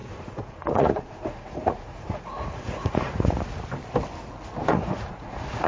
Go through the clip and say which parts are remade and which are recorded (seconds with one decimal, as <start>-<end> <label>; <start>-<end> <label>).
0.0-3.4 remade; 3.4-4.7 recorded; 4.7-5.7 remade